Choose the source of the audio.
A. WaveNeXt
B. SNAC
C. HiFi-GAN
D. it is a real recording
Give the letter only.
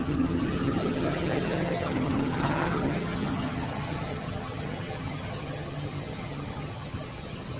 C